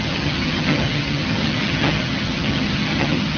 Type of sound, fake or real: fake